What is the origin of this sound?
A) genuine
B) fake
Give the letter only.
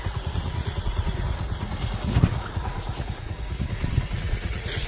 B